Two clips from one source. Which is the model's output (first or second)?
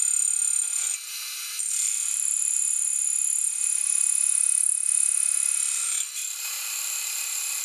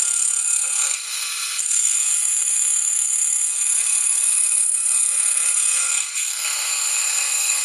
second